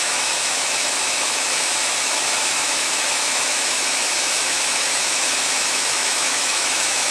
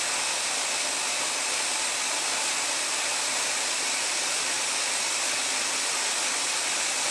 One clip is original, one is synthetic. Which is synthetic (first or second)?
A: first